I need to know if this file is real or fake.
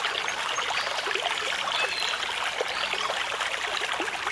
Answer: real